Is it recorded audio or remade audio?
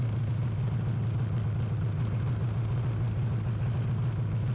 recorded